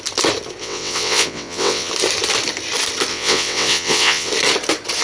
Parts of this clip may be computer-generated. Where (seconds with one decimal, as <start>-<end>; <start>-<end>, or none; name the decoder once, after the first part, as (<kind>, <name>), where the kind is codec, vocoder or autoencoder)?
0.6-1.9 (vocoder, WaveNeXt); 3.1-4.3